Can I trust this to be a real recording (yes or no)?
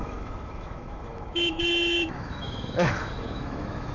no